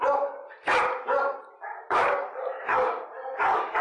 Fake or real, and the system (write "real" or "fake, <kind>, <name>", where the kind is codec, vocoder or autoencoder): fake, vocoder, BigVGAN v2